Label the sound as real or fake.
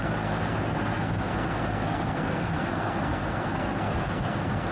fake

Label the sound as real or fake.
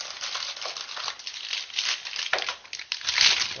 real